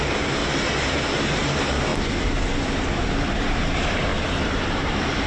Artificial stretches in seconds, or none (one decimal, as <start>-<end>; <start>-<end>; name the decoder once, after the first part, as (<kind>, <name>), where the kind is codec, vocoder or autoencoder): 0.0-0.4 (vocoder, BigVGAN v2); 0.9-1.9; 3.0-5.3